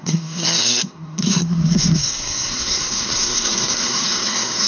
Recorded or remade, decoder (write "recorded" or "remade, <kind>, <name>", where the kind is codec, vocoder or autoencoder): remade, codec, SNAC